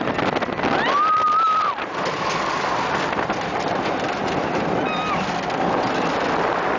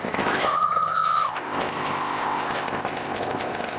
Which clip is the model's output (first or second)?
second